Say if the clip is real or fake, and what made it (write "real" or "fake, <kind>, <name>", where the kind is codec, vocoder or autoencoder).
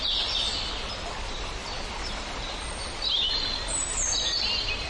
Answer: real